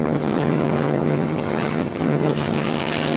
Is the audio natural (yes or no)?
no